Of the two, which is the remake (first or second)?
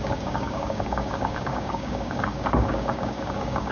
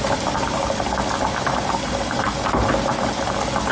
first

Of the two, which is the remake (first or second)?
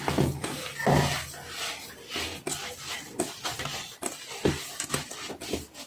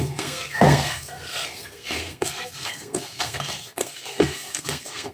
second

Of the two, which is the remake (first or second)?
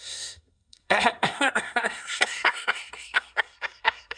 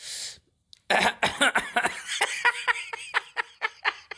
first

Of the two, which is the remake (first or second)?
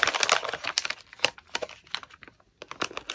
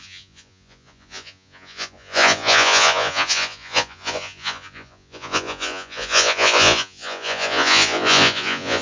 second